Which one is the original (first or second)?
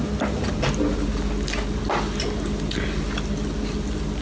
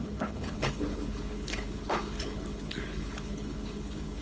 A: first